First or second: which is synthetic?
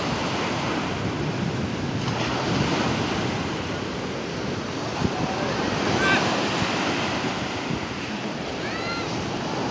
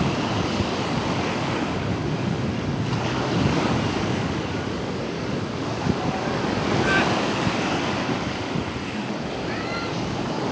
second